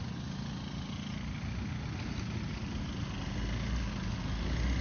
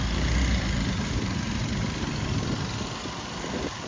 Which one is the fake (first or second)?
second